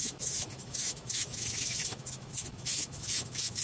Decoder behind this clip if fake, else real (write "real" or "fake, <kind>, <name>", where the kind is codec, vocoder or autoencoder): fake, autoencoder, DAC-VAE